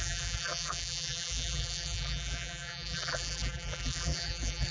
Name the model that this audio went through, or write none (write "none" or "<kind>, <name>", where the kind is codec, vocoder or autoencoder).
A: vocoder, BigVGAN v2